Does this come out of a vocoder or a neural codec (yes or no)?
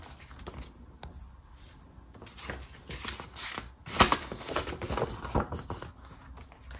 no